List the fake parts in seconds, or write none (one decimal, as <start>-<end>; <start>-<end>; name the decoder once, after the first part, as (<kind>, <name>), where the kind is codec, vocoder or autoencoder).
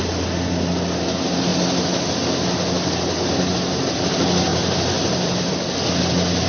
4.5-5.5 (vocoder, BigVGAN v2)